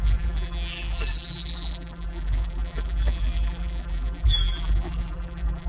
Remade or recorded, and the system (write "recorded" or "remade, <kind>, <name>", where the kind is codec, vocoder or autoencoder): remade, vocoder, BigVGAN v2